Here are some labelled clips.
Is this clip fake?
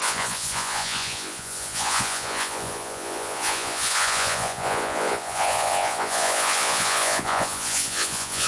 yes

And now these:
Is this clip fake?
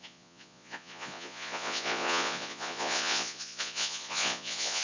yes